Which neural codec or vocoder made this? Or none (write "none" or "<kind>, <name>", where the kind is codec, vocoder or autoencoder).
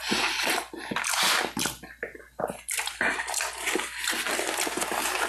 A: none